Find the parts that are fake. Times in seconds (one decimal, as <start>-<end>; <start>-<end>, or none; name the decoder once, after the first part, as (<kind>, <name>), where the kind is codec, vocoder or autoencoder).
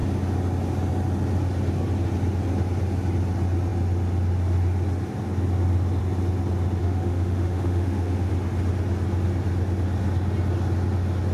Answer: 6.8-8.3 (autoencoder, DAC-VAE)